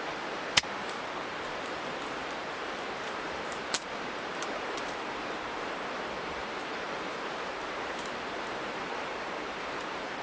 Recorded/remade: remade